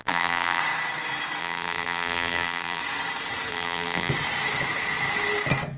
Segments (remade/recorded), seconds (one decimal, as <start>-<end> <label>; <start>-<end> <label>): 0.0-0.6 remade; 0.6-1.4 recorded; 1.4-2.8 remade; 2.8-3.5 recorded; 3.5-4.1 remade; 4.1-5.8 recorded